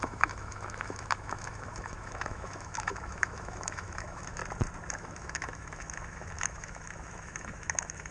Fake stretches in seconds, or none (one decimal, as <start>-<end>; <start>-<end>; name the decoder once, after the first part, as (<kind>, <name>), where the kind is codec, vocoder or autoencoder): 0.0-4.4 (autoencoder, DAC-VAE); 4.9-8.1

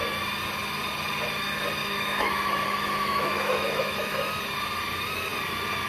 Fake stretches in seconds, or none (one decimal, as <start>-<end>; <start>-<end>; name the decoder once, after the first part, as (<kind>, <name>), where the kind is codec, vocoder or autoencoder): 1.8-4.4 (autoencoder, DAC-VAE)

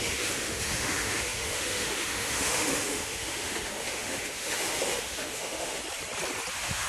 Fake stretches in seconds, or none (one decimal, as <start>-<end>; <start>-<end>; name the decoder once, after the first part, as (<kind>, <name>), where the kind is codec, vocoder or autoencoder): 0.0-5.8 (autoencoder, DAC-VAE); 6.5-6.9

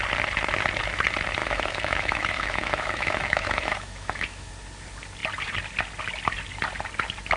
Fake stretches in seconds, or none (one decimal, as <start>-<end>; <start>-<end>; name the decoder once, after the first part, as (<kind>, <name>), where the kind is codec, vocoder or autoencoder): 1.4-4.5 (autoencoder, DAC-VAE)

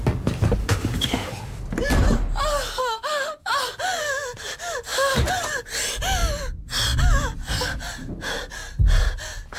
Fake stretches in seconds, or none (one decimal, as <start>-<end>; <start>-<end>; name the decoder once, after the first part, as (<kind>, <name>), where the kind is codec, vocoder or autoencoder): 0.6-1.6 (autoencoder, DAC-VAE); 2.8-3.5

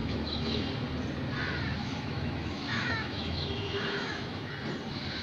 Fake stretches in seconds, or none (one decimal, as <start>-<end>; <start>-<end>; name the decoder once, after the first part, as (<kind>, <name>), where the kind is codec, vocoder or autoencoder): 0.0-0.6 (autoencoder, DAC-VAE); 1.8-4.5